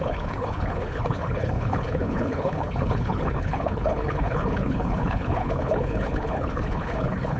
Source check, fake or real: fake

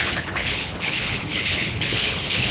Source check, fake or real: fake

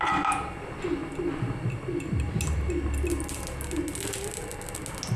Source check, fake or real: real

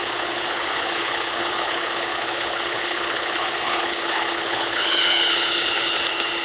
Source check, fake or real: fake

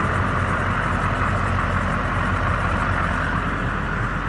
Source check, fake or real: real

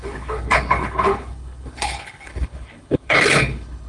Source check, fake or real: fake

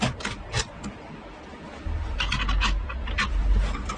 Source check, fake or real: real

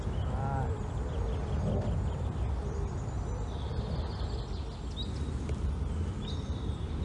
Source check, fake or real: real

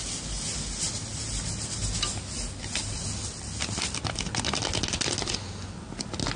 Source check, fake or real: real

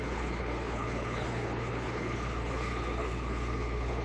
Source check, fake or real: fake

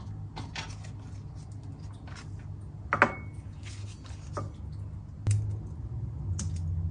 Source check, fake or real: real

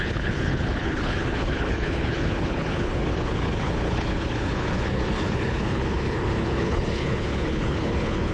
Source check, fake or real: fake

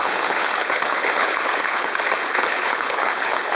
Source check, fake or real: fake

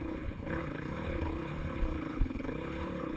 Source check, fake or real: fake